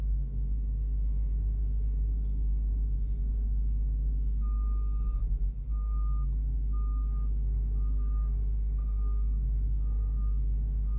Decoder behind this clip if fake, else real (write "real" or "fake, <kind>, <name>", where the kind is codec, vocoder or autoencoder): fake, codec, SNAC